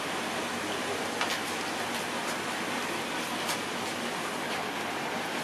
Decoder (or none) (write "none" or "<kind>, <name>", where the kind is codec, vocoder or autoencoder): none